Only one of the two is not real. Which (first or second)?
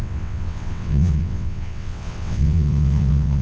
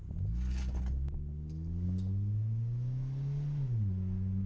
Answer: first